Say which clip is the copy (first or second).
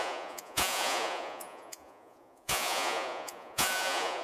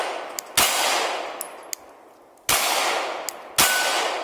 first